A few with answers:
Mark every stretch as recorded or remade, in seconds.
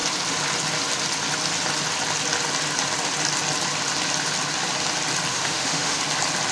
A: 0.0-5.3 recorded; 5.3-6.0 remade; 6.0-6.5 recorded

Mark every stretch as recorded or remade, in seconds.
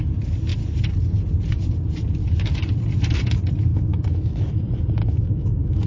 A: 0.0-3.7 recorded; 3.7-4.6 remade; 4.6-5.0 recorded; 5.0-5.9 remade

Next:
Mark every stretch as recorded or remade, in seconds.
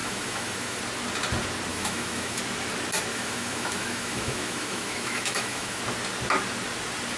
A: 0.0-0.8 remade; 0.8-1.7 recorded; 1.7-2.4 remade; 2.4-3.1 recorded; 3.1-5.8 remade; 5.8-7.2 recorded